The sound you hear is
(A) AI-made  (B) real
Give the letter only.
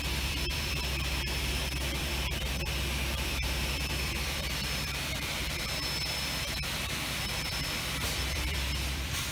A